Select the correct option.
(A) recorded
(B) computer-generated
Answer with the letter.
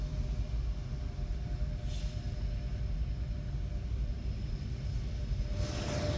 A